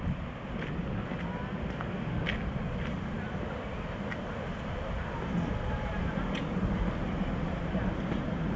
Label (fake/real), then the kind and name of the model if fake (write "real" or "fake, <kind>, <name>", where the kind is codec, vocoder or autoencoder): real